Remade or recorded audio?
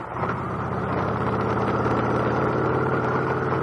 remade